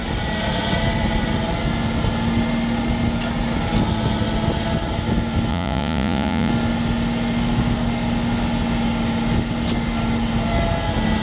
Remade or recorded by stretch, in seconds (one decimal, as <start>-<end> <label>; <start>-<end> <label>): 0.0-5.5 recorded; 5.5-6.5 remade; 6.5-11.2 recorded